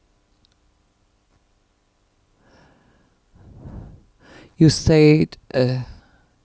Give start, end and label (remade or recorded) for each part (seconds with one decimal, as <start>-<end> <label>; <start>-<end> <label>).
0.0-5.5 recorded; 5.5-6.0 remade; 6.0-6.4 recorded